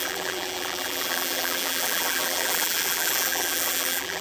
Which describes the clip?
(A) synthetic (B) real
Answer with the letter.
A